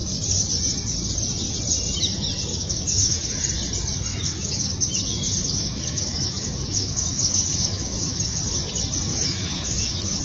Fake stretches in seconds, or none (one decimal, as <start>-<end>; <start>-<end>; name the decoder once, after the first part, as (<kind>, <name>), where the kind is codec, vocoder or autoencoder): 2.5-3.4 (autoencoder, DAC-VAE); 4.1-8.4; 9.1-10.2